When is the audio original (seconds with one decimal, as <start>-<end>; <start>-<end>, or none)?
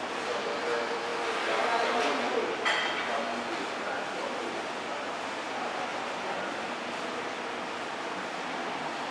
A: 0.0-5.9; 7.4-9.1